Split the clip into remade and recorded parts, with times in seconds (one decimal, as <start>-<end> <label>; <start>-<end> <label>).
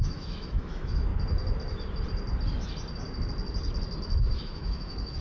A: 0.0-1.1 remade; 1.1-4.2 recorded; 4.2-5.2 remade